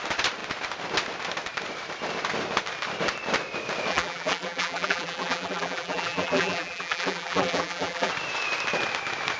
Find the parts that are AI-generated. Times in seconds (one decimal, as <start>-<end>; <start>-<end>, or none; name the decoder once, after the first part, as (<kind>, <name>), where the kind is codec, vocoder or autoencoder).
3.9-8.1 (vocoder, BigVGAN v2)

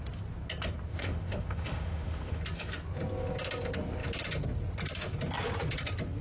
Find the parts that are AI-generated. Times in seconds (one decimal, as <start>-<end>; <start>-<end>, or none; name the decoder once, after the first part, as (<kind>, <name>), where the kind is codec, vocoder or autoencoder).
0.9-2.4 (autoencoder, DAC-VAE)

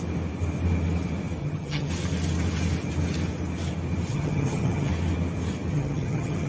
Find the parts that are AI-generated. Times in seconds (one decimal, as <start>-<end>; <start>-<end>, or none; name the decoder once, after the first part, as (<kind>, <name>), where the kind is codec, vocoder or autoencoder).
1.4-1.9 (vocoder, HiFi-GAN); 4.1-4.9; 5.7-6.5